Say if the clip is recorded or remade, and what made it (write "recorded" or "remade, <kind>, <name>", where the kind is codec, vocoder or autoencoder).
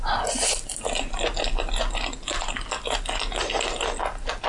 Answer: recorded